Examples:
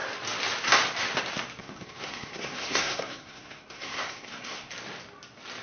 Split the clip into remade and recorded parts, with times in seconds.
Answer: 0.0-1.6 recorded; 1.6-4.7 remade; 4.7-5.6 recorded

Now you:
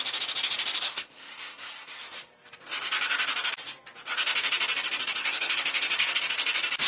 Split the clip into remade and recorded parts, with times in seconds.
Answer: 0.0-0.9 recorded; 0.9-2.0 remade; 2.0-5.2 recorded; 5.2-6.2 remade; 6.2-6.9 recorded

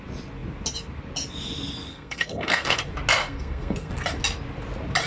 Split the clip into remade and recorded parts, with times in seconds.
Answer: 0.0-1.9 recorded; 1.9-2.8 remade; 2.8-3.2 recorded; 3.2-3.9 remade; 3.9-5.1 recorded

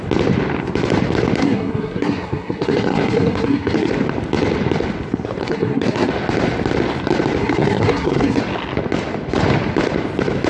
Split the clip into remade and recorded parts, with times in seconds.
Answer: 0.0-1.4 recorded; 1.4-3.9 remade; 3.9-5.4 recorded; 5.4-6.1 remade; 6.1-7.4 recorded; 7.4-8.4 remade; 8.4-10.5 recorded

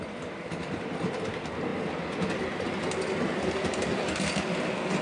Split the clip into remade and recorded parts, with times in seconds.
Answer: 0.0-5.0 recorded

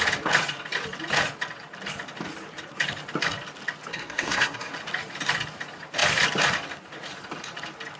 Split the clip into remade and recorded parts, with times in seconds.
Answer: 0.0-3.9 recorded; 3.9-4.7 remade; 4.7-8.0 recorded

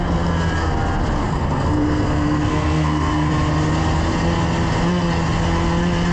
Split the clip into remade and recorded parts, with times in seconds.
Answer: 0.0-1.2 recorded; 1.2-3.3 remade; 3.3-6.1 recorded

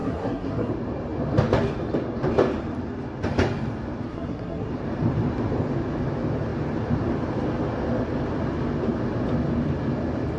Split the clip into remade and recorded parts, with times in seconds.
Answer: 0.0-0.7 remade; 0.7-4.1 recorded; 4.1-4.7 remade; 4.7-10.4 recorded